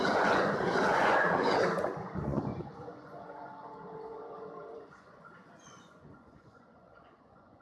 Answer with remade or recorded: remade